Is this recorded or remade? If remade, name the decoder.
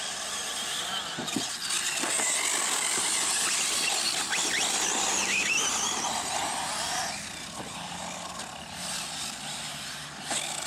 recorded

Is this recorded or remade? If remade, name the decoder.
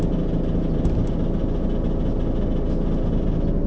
recorded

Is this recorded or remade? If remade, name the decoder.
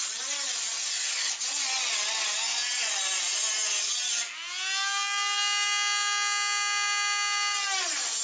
recorded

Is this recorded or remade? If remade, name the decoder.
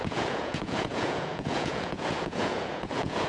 remade, vocoder, Vocos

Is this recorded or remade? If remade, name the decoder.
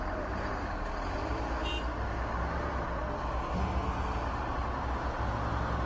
recorded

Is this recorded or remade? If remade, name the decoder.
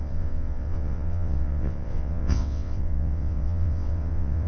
remade, vocoder, WaveNeXt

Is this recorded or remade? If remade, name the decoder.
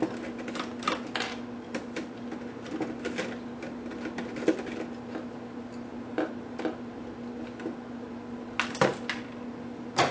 recorded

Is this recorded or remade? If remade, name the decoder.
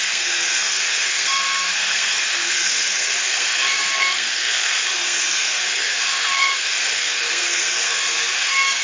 remade, codec, SNAC